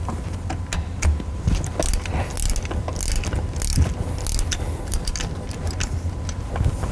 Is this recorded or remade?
recorded